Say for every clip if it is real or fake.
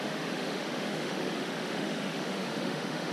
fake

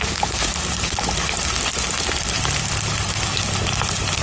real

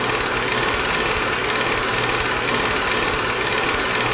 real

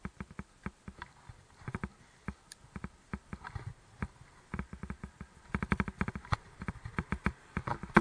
real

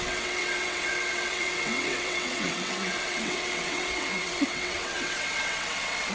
fake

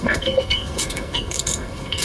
fake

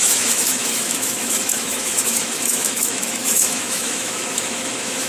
fake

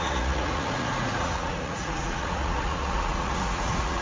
fake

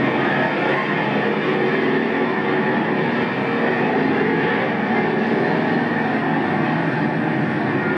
real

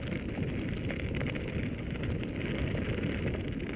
real